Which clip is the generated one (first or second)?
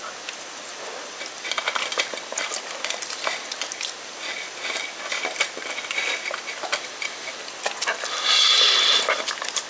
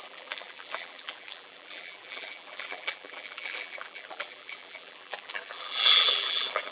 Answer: second